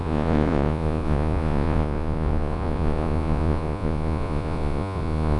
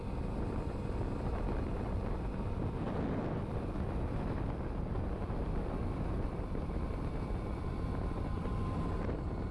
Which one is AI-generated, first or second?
first